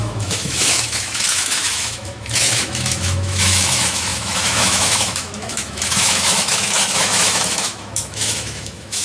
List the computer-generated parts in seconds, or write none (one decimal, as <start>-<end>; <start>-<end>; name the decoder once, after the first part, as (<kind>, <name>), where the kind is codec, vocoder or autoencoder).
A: 0.0-9.0 (autoencoder, DAC-VAE)